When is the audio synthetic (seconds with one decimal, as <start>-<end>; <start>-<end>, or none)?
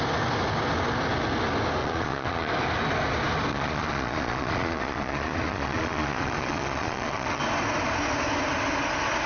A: 1.8-2.5; 3.5-7.4